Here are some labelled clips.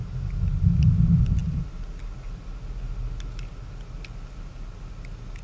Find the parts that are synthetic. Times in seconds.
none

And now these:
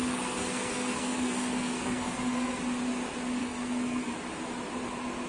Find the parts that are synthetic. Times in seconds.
0.0-2.6 (codec, SNAC); 3.4-4.1